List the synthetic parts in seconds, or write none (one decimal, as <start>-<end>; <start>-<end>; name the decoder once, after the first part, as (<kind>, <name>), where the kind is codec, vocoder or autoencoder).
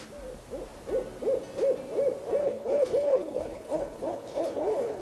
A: 2.4-5.0 (codec, HILCodec)